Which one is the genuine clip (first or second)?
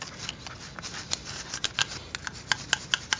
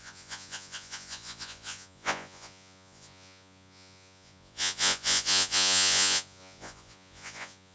first